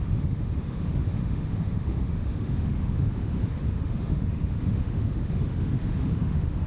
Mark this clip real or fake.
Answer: fake